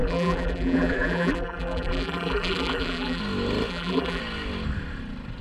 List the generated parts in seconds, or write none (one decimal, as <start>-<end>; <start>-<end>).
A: 0.0-3.2; 3.7-4.2